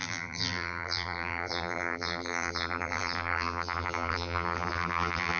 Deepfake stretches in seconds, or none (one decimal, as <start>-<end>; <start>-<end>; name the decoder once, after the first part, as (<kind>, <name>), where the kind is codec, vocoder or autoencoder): 0.0-5.4 (vocoder, BigVGAN v2)